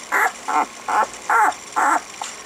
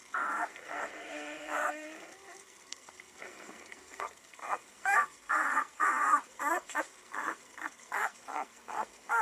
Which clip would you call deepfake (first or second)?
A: second